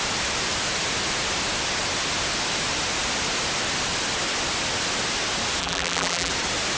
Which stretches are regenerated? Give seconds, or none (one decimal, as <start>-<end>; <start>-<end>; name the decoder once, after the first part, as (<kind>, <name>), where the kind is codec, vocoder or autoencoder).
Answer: 5.6-6.3 (vocoder, BigVGAN v2)